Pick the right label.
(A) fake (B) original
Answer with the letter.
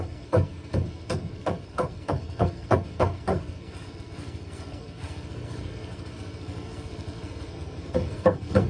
A